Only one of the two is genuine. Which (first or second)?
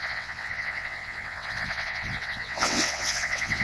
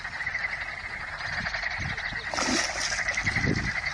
second